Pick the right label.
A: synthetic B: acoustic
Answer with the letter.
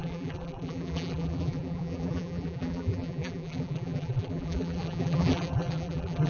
A